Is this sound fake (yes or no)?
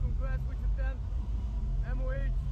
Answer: yes